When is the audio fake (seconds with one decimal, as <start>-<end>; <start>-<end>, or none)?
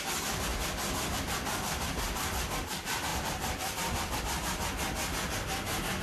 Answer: 0.5-1.2; 3.1-4.2